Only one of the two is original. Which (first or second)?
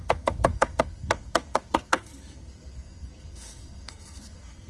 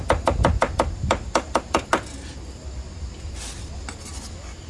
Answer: second